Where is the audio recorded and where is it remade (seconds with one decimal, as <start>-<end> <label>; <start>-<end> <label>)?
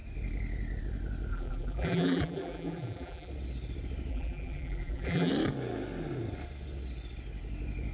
0.0-1.3 recorded; 1.3-3.3 remade; 3.3-4.1 recorded; 4.1-5.3 remade; 5.3-7.9 recorded